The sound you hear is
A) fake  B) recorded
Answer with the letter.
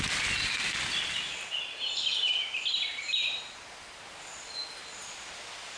B